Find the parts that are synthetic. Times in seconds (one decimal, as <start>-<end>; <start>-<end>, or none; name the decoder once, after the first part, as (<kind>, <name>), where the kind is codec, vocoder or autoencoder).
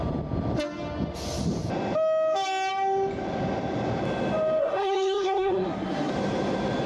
4.6-6.1 (codec, SNAC)